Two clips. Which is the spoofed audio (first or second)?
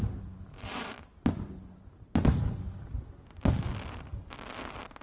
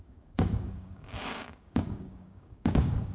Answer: second